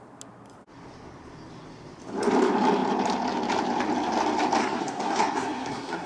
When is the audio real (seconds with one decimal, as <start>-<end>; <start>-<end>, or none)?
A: 0.0-4.6